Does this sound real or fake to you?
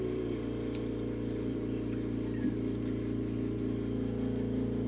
fake